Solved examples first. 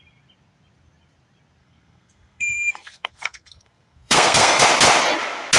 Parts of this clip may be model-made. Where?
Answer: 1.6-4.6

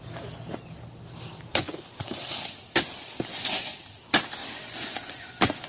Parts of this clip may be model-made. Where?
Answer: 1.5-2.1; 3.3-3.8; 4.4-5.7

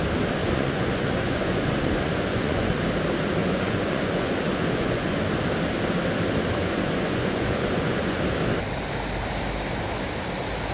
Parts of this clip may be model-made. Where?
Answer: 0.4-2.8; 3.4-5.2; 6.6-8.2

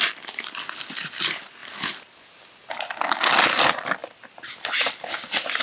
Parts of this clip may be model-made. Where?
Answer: none